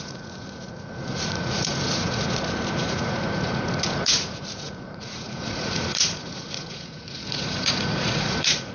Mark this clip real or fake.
fake